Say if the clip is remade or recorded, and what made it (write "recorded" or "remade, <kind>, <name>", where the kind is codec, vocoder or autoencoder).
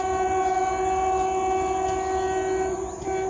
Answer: recorded